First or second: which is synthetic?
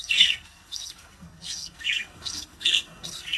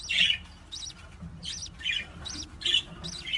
first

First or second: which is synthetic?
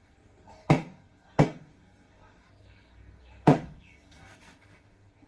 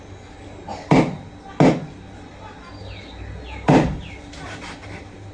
first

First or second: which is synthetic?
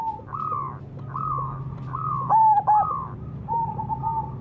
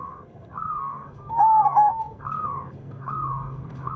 second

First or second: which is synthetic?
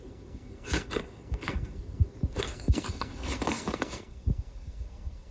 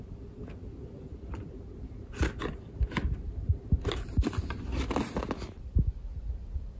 first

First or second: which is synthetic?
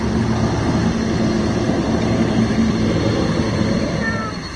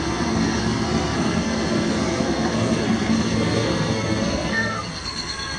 second